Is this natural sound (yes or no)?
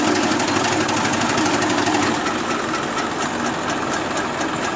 yes